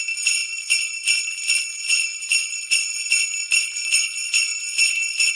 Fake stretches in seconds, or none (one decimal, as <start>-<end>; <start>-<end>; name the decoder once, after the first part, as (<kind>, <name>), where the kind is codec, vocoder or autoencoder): 4.5-5.3 (vocoder, Vocos)